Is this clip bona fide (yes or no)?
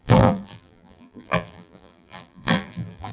no